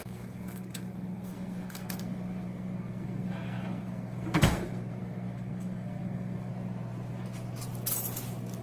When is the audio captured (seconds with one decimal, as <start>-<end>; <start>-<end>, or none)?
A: 6.5-8.6